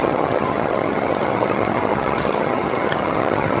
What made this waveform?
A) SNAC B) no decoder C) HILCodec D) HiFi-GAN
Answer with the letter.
D